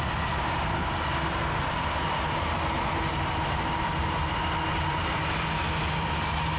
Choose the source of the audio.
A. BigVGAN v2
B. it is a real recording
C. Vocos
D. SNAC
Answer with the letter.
B